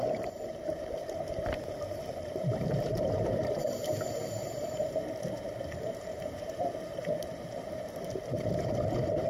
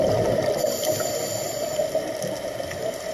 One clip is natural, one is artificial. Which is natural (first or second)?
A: second